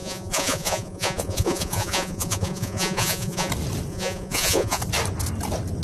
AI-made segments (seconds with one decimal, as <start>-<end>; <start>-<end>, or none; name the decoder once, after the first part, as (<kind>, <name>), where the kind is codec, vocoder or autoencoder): 0.0-3.5 (vocoder, Vocos); 3.9-4.8